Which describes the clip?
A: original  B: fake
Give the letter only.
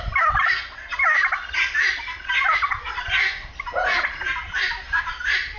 A